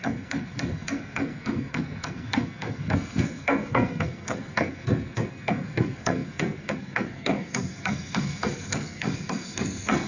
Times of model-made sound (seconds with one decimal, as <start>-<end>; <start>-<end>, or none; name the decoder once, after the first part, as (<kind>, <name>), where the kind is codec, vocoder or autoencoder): 0.0-10.1 (codec, SNAC)